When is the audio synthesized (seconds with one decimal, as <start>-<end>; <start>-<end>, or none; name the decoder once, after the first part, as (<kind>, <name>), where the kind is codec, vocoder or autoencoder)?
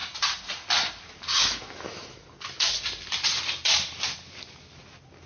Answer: 1.3-2.7 (autoencoder, DAC-VAE)